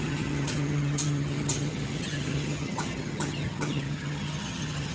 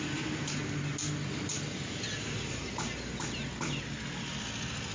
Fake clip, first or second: first